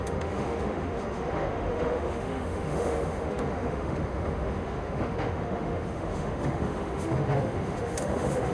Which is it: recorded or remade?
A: remade